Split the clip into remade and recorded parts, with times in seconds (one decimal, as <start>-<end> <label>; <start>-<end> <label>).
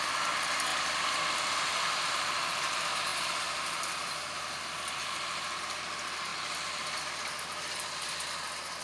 0.0-0.7 recorded; 0.7-2.1 remade; 2.1-3.1 recorded; 3.1-5.6 remade; 5.6-8.8 recorded